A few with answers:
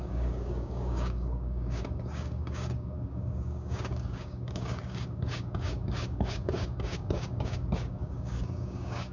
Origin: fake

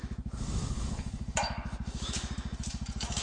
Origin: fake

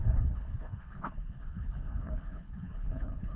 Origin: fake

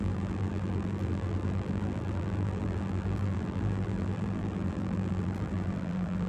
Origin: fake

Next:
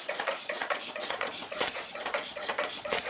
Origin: fake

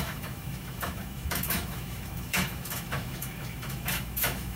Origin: fake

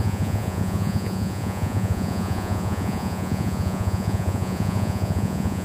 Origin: fake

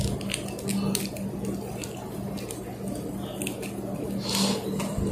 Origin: real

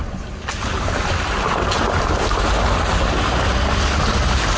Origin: real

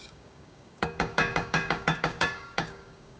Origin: fake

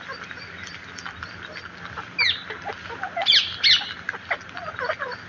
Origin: real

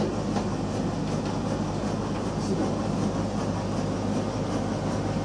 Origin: real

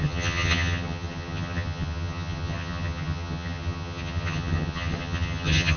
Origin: fake